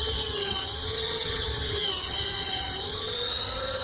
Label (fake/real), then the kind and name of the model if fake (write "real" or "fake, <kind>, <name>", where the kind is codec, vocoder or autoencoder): fake, vocoder, HiFi-GAN